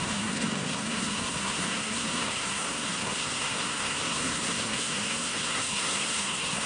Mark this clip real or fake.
fake